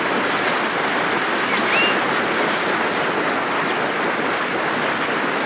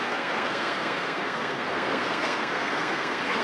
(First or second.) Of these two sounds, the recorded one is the first